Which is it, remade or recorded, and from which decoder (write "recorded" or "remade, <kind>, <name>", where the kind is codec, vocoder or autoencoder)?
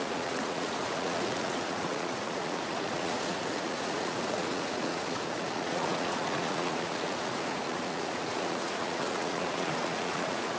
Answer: remade, vocoder, Vocos